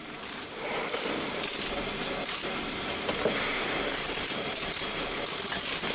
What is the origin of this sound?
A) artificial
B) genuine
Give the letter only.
A